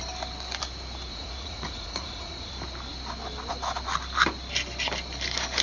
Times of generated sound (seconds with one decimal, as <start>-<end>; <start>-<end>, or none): 1.1-2.5